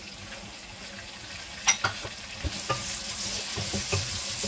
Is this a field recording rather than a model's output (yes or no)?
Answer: yes